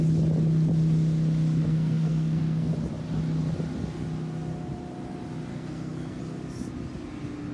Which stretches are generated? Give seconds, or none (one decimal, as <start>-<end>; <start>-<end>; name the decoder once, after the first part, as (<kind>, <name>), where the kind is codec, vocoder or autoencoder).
1.6-2.7 (codec, SNAC); 5.5-6.2